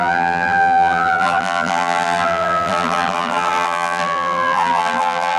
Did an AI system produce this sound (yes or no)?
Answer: yes